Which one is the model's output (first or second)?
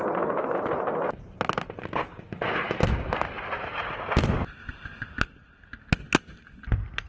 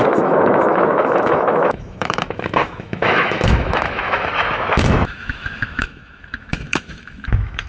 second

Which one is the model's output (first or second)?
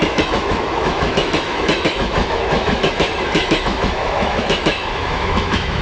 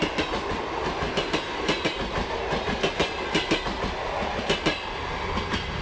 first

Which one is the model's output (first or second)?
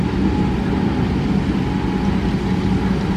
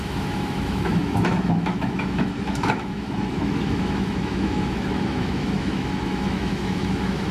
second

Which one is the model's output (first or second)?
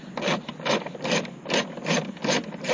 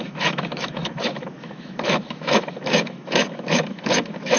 second